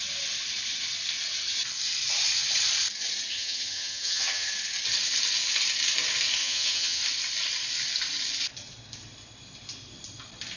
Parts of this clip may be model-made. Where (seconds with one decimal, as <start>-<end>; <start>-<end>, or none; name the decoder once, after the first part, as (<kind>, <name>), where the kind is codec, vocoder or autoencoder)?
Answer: 3.3-4.5 (vocoder, HiFi-GAN); 6.4-7.0